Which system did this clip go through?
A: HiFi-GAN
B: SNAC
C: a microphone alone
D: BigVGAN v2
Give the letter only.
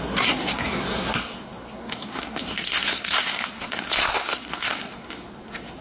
B